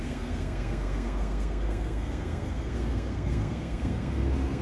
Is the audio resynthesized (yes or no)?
yes